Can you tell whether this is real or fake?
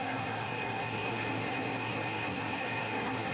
fake